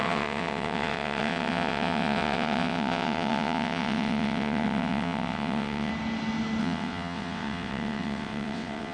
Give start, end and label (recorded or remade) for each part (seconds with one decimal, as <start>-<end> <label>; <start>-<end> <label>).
0.0-5.9 remade; 5.9-6.6 recorded; 6.6-8.9 remade

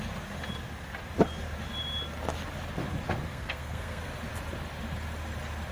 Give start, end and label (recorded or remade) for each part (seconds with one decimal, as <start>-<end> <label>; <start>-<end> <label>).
0.0-3.3 recorded; 3.3-4.1 remade; 4.1-5.7 recorded

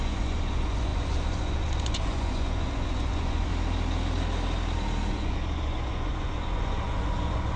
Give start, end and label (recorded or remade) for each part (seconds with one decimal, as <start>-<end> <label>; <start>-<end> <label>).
0.0-3.5 remade; 3.5-5.1 recorded; 5.1-7.6 remade

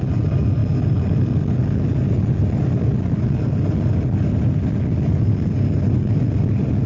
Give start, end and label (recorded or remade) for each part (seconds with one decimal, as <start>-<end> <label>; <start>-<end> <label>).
0.0-6.9 recorded